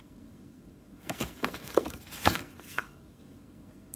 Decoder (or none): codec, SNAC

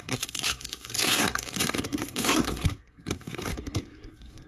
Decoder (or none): codec, SNAC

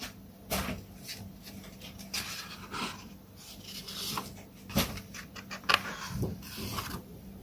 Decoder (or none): none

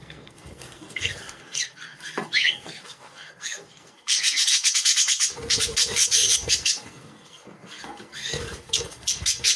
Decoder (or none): codec, SNAC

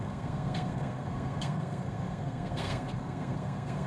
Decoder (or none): codec, SNAC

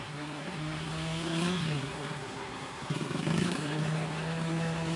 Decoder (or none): codec, SNAC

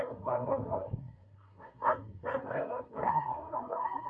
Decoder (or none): codec, SNAC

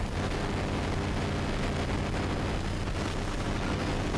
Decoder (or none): none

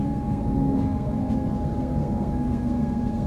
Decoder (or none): codec, SNAC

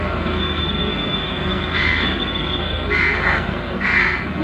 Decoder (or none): codec, SNAC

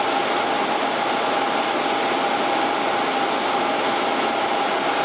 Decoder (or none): none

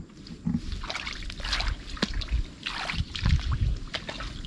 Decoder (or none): none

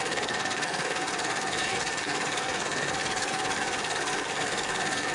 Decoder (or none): codec, SNAC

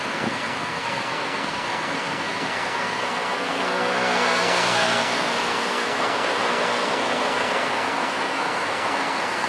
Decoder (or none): codec, SNAC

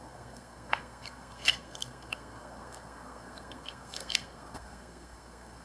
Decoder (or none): codec, SNAC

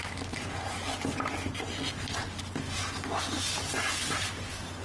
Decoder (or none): none